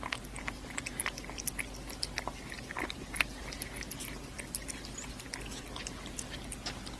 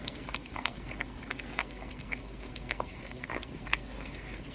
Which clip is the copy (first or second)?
second